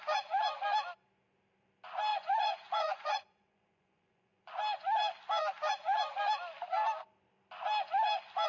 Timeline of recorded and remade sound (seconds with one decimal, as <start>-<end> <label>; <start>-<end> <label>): 0.0-2.1 recorded; 2.1-4.5 remade; 4.5-8.5 recorded